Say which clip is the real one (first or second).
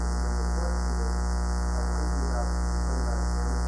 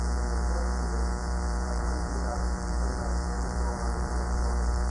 first